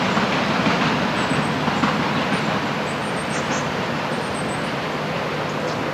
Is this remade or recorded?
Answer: recorded